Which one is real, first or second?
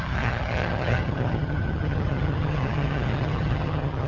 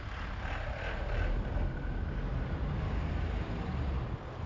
second